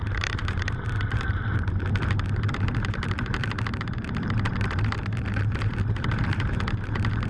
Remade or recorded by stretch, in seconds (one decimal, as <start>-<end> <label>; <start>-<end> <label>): 0.0-7.3 remade